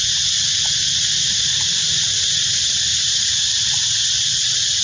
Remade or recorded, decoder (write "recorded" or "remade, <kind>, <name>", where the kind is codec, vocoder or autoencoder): recorded